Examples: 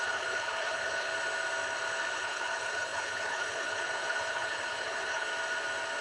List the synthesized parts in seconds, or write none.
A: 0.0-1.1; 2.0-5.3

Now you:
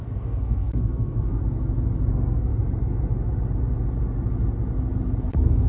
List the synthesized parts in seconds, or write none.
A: 0.0-1.4; 2.1-2.5; 5.2-5.7

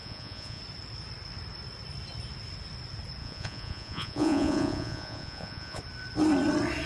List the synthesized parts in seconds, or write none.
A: 0.0-0.6; 3.2-5.8